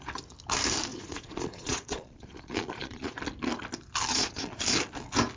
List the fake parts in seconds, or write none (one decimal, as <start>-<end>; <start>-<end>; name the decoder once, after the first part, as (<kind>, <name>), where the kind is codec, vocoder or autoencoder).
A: 0.9-3.2 (vocoder, Vocos); 4.1-4.6